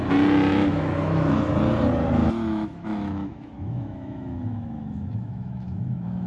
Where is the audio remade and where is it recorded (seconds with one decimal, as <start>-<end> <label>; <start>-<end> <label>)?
0.0-0.5 recorded; 0.5-1.5 remade; 1.5-2.2 recorded; 2.2-6.3 remade

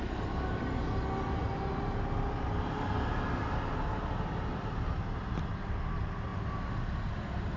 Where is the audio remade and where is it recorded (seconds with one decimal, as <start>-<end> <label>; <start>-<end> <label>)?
0.0-7.6 recorded